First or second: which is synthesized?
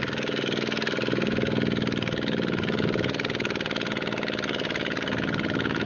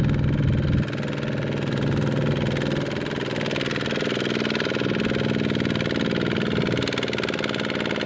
first